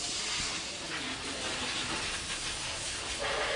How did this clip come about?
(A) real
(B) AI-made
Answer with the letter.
A